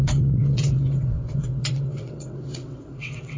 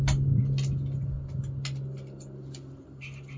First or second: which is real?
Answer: second